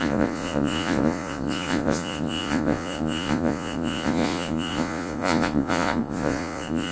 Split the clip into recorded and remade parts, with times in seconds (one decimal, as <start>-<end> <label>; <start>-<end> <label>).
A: 0.0-6.9 remade